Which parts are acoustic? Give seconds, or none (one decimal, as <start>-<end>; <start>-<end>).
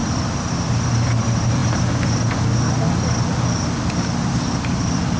0.0-5.2